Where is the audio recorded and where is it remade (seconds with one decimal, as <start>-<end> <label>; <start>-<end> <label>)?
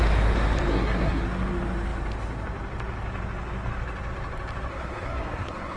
0.0-0.7 recorded; 0.7-1.2 remade; 1.2-4.7 recorded; 4.7-5.8 remade